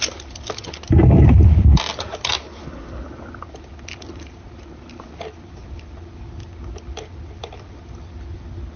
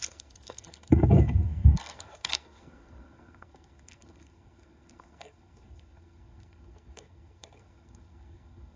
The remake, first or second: second